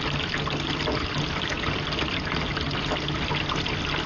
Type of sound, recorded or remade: recorded